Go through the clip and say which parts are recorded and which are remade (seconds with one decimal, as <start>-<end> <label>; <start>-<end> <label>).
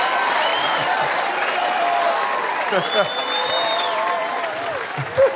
0.0-0.5 recorded; 0.5-2.0 remade; 2.0-5.4 recorded